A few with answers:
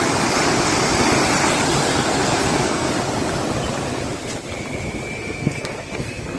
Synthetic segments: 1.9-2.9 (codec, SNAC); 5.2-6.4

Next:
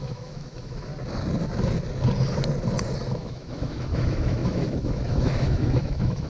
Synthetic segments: 0.0-0.9 (autoencoder, DAC-VAE); 3.1-6.3

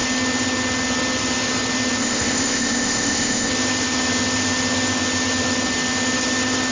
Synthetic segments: 2.0-3.5 (codec, ZipCodec)

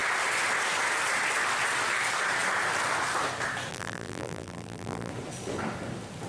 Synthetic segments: 3.7-5.1 (vocoder, BigVGAN v2)

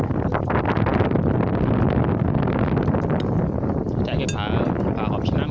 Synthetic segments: none

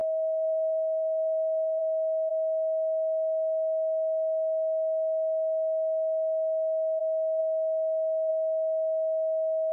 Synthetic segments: 0.0-1.8 (codec, SNAC)

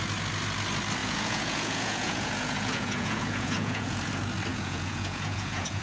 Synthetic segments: 1.0-4.1 (vocoder, Vocos); 4.5-5.8

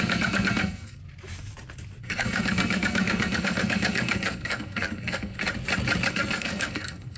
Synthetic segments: 0.0-1.0 (codec, SNAC); 2.0-5.4; 6.1-7.2